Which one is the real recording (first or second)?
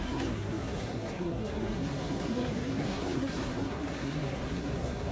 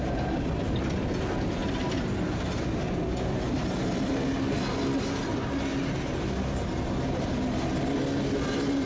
second